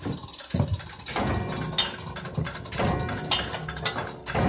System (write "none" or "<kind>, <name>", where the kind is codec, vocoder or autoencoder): none